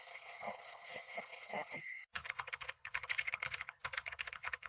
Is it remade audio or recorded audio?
remade